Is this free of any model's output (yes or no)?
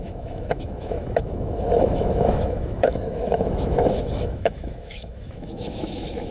no